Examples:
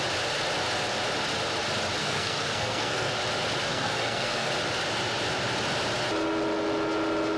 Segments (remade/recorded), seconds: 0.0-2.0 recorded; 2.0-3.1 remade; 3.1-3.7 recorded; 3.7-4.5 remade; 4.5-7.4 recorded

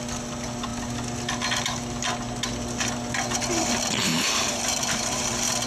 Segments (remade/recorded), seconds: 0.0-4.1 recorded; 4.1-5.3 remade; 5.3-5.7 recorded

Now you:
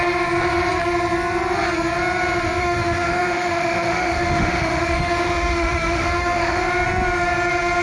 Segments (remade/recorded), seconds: 0.0-2.6 recorded; 2.6-6.6 remade; 6.6-7.8 recorded